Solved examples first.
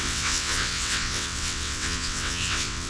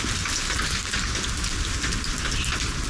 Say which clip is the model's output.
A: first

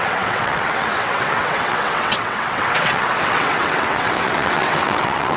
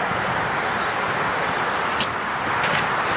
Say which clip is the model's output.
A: first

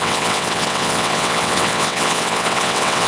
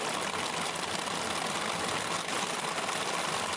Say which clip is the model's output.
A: first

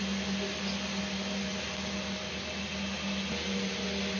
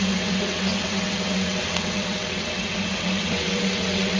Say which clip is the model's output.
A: second